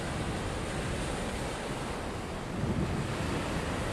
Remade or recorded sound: recorded